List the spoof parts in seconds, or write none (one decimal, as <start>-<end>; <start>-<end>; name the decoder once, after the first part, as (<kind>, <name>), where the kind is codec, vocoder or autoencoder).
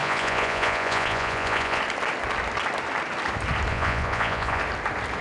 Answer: 0.0-1.8 (vocoder, Vocos); 3.7-4.6